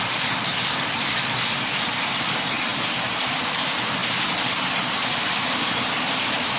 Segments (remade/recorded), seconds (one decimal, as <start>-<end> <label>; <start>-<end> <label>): 0.0-4.0 remade; 4.0-4.6 recorded; 4.6-6.6 remade